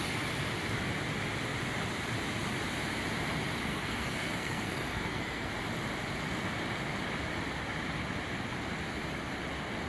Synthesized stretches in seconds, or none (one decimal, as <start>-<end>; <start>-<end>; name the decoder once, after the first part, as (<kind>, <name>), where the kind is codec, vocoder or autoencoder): 3.7-5.5 (codec, SNAC)